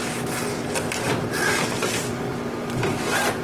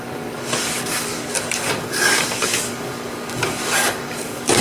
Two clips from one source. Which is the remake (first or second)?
second